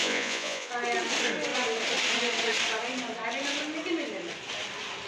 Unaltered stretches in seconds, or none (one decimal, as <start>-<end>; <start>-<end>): 0.7-5.1